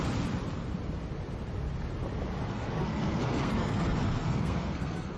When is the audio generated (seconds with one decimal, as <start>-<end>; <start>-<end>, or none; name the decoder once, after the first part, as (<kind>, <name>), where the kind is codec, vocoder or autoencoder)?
2.5-5.2 (codec, SNAC)